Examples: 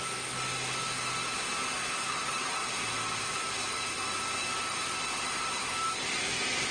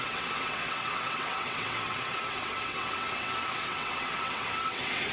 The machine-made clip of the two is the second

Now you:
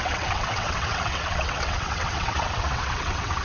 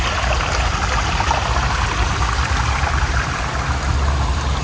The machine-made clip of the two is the first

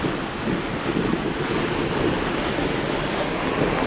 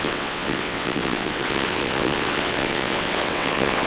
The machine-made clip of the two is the second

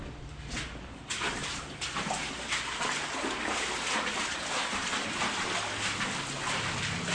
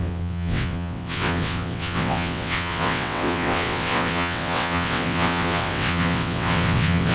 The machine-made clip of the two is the second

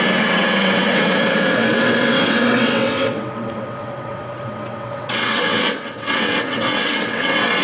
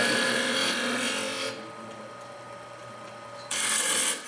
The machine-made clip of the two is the first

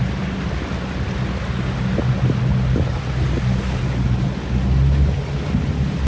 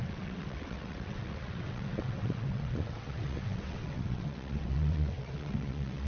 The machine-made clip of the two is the second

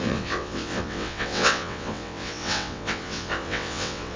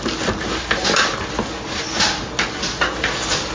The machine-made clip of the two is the first